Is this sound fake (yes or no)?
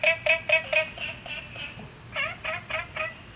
no